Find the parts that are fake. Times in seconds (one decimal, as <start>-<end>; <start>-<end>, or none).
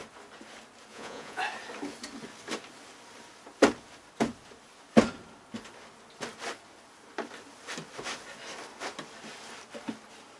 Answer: 0.9-1.4